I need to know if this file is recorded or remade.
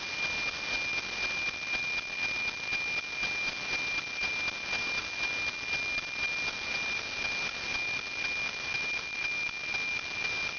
recorded